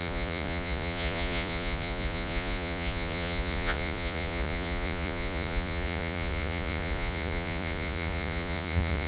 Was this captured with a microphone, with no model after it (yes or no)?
no